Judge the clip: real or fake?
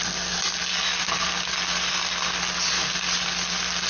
real